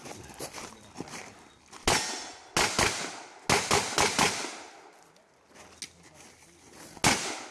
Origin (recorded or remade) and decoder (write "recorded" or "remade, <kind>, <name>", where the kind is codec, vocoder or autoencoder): recorded